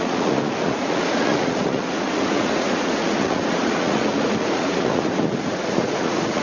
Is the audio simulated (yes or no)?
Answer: yes